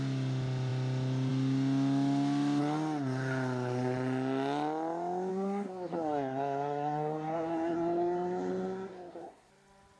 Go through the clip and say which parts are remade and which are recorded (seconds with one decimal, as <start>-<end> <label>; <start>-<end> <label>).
0.0-5.3 recorded; 5.3-9.5 remade; 9.5-10.0 recorded